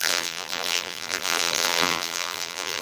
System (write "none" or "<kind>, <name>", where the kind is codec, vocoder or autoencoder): vocoder, BigVGAN v2